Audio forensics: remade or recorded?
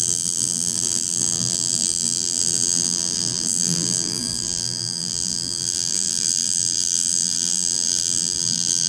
remade